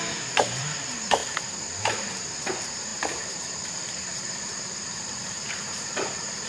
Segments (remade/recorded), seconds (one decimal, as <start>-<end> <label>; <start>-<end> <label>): 0.0-1.2 remade; 1.2-1.8 recorded; 1.8-6.5 remade